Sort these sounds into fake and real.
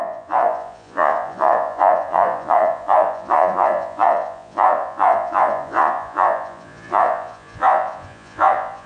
fake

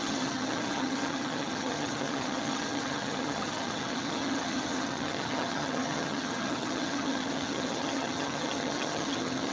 fake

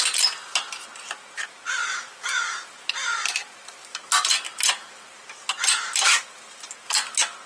real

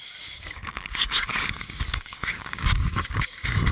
fake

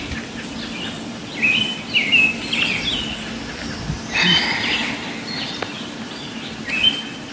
real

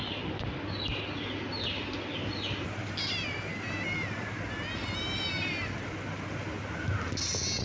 real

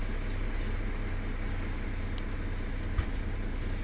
real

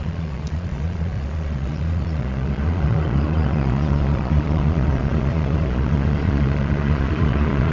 fake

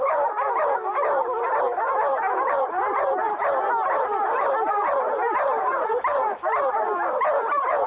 real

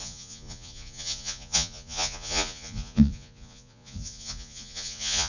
fake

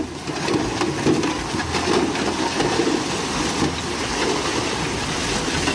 real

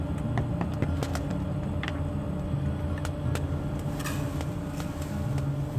real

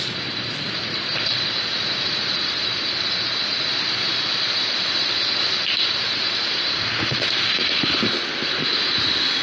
real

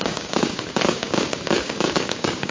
fake